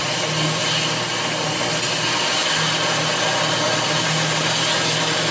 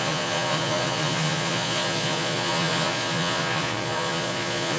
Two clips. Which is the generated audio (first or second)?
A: second